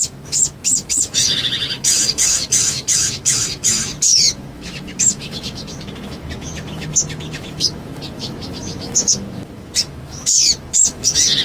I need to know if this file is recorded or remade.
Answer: remade